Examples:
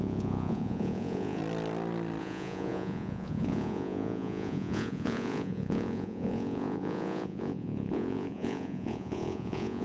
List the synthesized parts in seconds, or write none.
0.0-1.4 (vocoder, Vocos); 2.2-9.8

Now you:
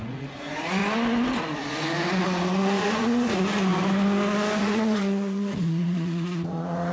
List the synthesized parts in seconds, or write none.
0.0-0.8 (vocoder, Vocos); 2.2-3.7; 4.6-6.9

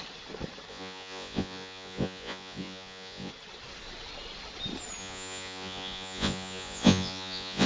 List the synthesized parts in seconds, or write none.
0.7-3.3 (vocoder, Vocos); 5.0-7.7

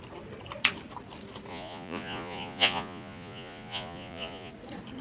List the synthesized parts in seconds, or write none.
1.5-4.5 (vocoder, Vocos)

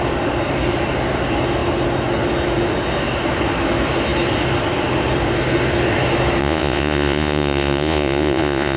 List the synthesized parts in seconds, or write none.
6.4-8.8 (vocoder, Vocos)

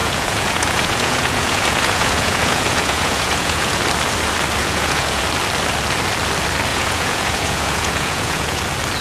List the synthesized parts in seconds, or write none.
0.0-3.8 (vocoder, Vocos); 4.6-5.2; 6.7-8.6

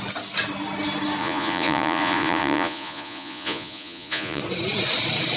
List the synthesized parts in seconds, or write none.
1.2-4.4 (vocoder, Vocos)